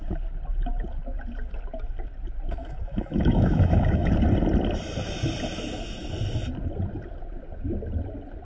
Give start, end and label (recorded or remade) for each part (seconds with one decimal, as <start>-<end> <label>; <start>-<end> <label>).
0.0-2.6 recorded; 2.6-4.1 remade; 4.1-8.4 recorded

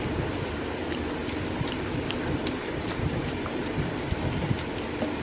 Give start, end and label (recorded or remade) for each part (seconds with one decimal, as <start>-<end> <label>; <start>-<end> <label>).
0.0-1.2 recorded; 1.2-4.3 remade; 4.3-5.2 recorded